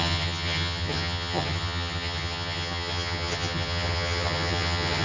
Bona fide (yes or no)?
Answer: no